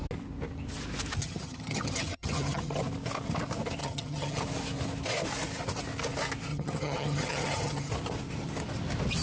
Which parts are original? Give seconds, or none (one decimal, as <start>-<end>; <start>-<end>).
0.0-1.2; 2.8-3.8; 4.4-6.5; 7.9-9.2